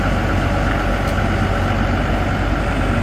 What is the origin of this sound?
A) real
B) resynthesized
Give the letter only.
A